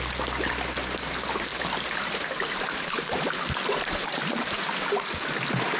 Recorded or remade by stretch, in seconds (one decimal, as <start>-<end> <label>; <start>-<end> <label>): 0.0-1.5 recorded; 1.5-5.0 remade; 5.0-5.8 recorded